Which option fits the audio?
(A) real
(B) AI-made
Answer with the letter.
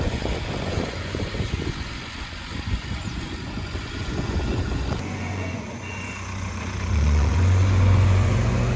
B